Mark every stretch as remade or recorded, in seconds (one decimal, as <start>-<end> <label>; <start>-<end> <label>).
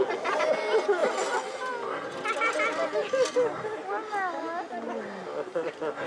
0.0-6.1 recorded